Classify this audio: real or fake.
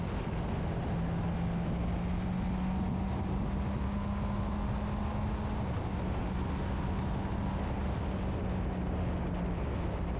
real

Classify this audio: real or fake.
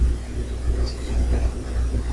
real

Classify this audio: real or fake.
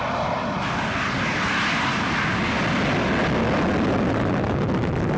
real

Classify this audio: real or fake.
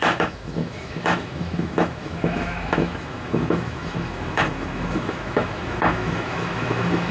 fake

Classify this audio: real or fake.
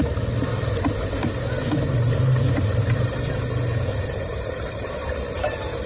fake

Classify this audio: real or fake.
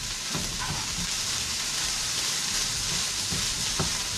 real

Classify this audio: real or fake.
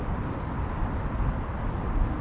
real